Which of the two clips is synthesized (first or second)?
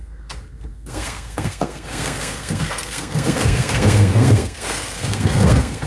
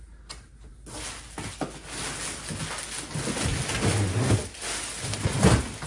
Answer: first